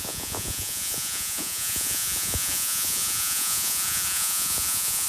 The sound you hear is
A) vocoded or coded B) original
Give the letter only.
A